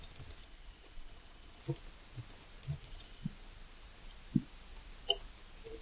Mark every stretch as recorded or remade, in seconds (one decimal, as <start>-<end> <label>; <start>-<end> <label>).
0.0-0.4 recorded; 0.4-1.6 remade; 1.6-2.8 recorded; 2.8-3.3 remade; 3.3-5.8 recorded